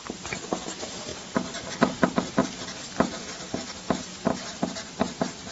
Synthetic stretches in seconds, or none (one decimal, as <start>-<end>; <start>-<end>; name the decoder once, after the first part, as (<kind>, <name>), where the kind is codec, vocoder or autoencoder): none